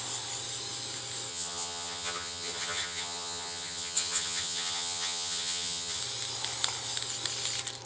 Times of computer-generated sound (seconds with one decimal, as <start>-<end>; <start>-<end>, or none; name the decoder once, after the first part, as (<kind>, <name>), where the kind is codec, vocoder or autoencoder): 1.3-6.0 (vocoder, HiFi-GAN)